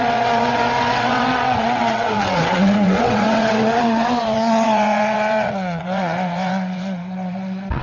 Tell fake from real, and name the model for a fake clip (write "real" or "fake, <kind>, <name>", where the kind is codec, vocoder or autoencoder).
fake, vocoder, WaveNeXt